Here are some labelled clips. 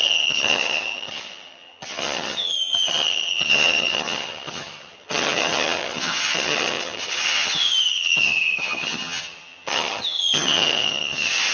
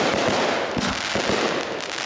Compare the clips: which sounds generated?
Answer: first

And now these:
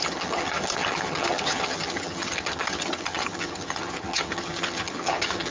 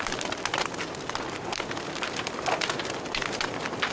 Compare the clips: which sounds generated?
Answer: first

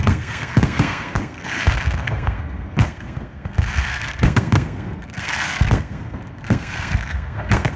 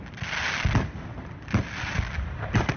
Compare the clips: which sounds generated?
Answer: first